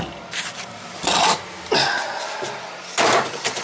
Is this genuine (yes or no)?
no